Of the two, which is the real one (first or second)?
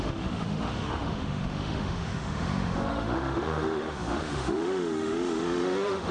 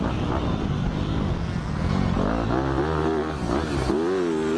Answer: second